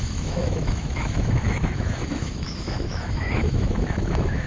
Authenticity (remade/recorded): remade